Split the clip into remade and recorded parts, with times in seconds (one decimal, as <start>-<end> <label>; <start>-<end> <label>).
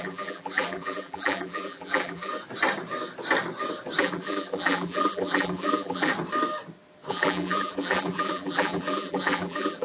0.0-2.3 remade; 2.3-4.0 recorded; 4.0-6.1 remade; 6.1-7.1 recorded; 7.1-9.8 remade